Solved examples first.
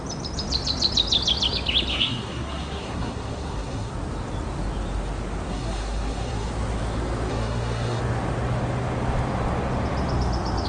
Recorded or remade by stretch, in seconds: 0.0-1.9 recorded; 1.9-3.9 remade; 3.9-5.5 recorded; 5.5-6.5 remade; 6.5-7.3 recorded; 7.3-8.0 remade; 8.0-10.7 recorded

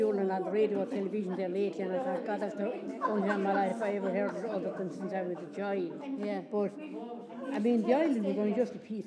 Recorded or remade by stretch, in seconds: 0.0-1.2 recorded; 1.2-3.2 remade; 3.2-3.7 recorded; 3.7-7.3 remade; 7.3-9.1 recorded